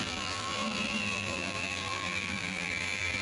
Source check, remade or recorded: remade